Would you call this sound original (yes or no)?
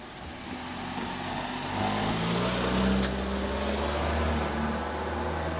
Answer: yes